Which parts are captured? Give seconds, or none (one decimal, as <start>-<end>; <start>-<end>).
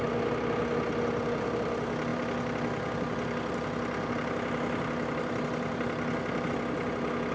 0.0-7.3